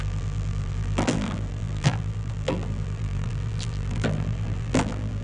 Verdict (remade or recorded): remade